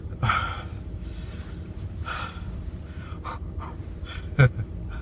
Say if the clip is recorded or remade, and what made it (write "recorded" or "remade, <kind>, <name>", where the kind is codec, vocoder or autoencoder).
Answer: remade, vocoder, BigVGAN v2